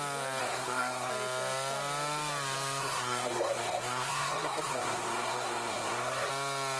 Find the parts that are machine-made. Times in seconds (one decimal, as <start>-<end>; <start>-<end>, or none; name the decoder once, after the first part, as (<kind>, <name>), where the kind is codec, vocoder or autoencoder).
0.4-1.1 (codec, SNAC); 2.8-6.3

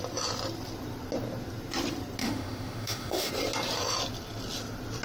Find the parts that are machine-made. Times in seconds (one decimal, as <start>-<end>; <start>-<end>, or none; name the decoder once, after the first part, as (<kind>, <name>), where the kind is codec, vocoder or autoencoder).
2.2-3.3 (autoencoder, DAC-VAE)

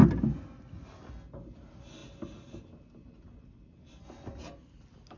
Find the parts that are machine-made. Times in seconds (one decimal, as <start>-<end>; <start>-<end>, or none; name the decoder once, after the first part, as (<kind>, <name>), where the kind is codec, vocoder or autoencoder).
none

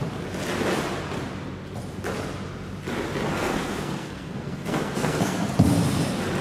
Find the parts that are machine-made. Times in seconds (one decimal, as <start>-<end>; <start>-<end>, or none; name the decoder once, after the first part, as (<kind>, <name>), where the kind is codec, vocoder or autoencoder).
3.3-5.5 (codec, SNAC)

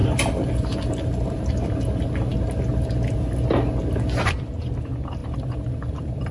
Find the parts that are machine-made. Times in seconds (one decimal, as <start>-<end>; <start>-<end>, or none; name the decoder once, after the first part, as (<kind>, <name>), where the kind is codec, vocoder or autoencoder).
0.0-1.5 (vocoder, BigVGAN v2); 5.2-6.3